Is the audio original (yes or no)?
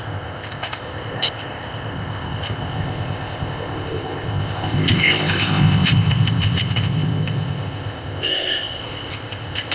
no